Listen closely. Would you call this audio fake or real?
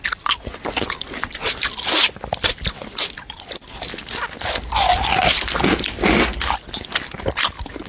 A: real